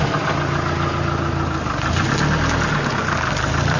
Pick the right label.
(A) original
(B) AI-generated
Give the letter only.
A